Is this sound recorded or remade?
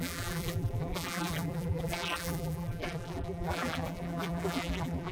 remade